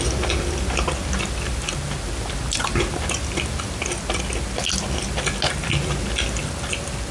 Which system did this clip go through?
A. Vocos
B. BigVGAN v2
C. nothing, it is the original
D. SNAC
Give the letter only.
C